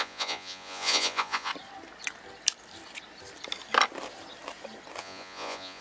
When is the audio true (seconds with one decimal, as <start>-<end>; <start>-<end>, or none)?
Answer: 1.5-5.0